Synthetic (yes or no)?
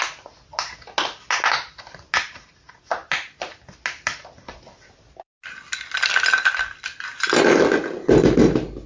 no